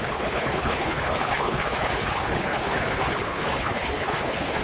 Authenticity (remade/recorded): remade